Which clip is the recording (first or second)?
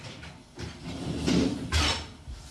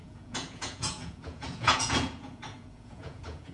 first